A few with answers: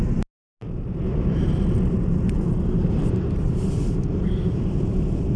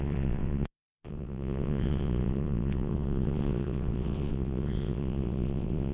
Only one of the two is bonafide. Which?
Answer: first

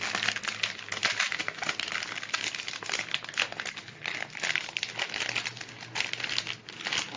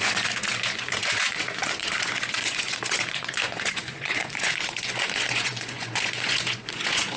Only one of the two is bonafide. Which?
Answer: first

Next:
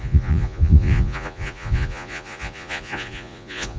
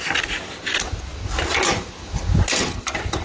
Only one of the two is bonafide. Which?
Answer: second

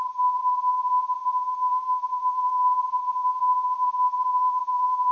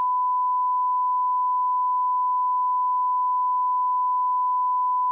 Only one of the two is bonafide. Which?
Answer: second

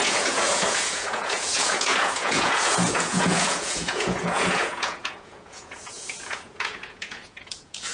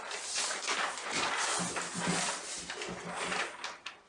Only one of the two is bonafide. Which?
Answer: second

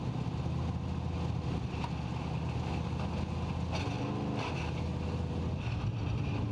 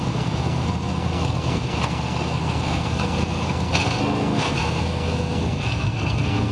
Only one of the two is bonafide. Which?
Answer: first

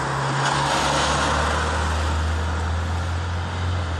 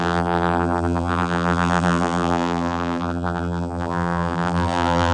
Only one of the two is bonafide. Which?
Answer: first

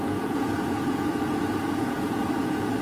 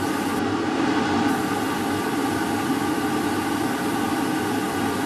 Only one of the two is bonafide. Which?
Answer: second